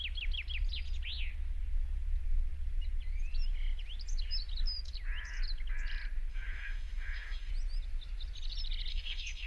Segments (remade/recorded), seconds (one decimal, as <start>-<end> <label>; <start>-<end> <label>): 0.0-6.3 recorded; 6.3-7.5 remade; 7.5-8.9 recorded; 8.9-9.5 remade